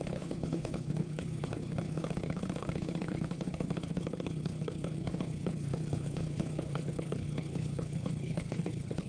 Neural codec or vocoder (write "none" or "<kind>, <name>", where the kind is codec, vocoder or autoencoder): codec, HILCodec